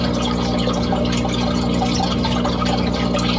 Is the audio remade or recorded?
recorded